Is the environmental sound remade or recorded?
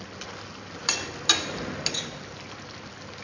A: recorded